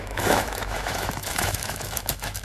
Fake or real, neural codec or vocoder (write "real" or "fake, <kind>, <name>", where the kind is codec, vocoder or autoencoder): fake, autoencoder, DAC-VAE